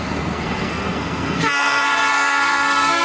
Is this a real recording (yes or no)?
no